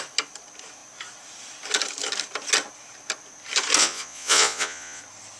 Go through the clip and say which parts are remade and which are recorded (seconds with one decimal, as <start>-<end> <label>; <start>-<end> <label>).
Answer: 0.0-3.8 recorded; 3.8-5.0 remade; 5.0-5.4 recorded